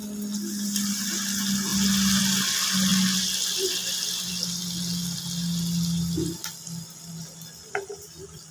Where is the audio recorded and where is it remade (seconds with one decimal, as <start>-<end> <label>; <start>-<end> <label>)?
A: 0.0-8.5 recorded